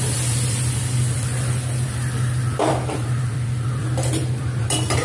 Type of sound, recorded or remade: remade